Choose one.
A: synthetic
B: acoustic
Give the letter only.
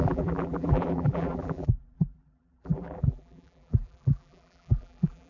A